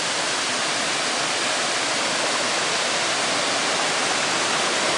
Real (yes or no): yes